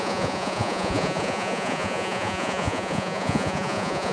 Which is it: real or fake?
fake